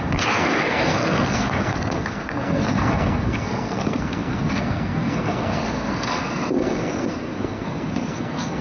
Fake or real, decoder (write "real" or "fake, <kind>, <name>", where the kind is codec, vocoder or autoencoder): fake, codec, SNAC